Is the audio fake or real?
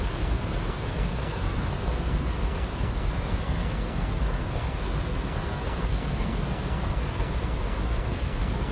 fake